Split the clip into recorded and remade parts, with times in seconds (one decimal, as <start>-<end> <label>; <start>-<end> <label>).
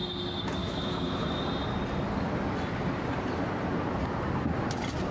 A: 0.0-0.6 recorded; 0.6-1.4 remade; 1.4-5.1 recorded